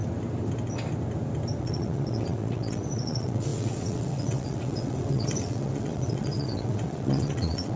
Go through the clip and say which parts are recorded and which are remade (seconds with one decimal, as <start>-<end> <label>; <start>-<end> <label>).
0.0-1.6 recorded; 1.6-7.8 remade